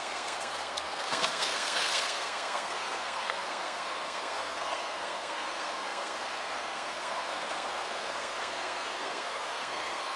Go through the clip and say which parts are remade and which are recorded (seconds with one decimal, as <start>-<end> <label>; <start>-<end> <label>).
0.0-10.2 remade